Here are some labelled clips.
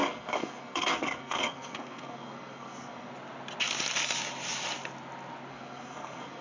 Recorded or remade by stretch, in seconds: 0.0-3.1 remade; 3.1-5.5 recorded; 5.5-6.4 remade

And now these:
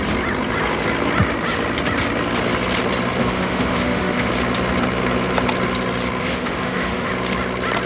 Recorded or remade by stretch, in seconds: 0.0-3.2 recorded; 3.2-4.3 remade; 4.3-6.2 recorded; 6.2-7.1 remade; 7.1-7.9 recorded

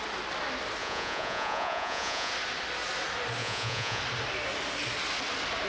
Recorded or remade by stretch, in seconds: 0.0-0.8 recorded; 0.8-2.3 remade; 2.3-3.4 recorded; 3.4-4.0 remade; 4.0-5.7 recorded

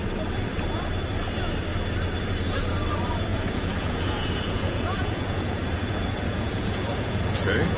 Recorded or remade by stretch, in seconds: 0.0-3.3 recorded; 3.3-7.8 remade

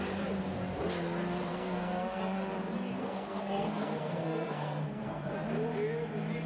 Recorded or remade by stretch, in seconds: 0.0-1.5 recorded; 1.5-2.2 remade; 2.2-3.0 recorded; 3.0-5.3 remade; 5.3-6.5 recorded

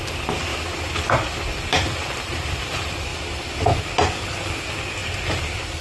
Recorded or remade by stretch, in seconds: 0.0-0.5 recorded; 0.5-2.6 remade; 2.6-5.0 recorded; 5.0-5.8 remade

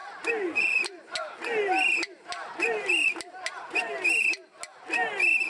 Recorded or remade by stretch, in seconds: 0.0-5.5 recorded